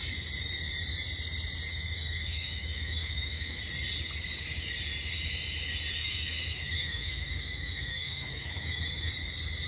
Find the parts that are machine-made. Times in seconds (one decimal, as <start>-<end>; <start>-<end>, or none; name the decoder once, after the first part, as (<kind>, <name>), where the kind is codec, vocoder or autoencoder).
1.7-3.6 (autoencoder, DAC-VAE); 6.0-9.1